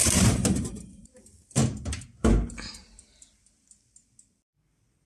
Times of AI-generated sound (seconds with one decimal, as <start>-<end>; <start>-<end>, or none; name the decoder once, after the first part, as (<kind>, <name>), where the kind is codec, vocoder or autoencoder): 0.0-1.2 (vocoder, BigVGAN v2)